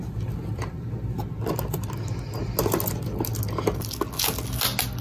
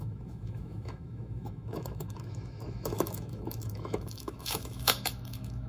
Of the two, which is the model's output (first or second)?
second